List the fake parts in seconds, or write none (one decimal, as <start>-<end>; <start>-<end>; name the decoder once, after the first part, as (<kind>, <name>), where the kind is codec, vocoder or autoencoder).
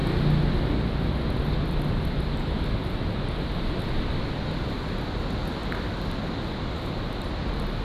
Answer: none